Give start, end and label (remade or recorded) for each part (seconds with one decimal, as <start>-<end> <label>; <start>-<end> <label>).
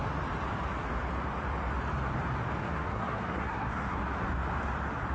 0.0-2.6 recorded; 2.6-4.0 remade; 4.0-5.1 recorded